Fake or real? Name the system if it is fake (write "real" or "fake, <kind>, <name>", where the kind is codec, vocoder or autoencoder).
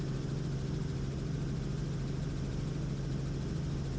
real